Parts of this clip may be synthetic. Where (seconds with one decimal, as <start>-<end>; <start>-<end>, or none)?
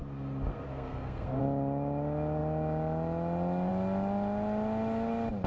0.5-1.4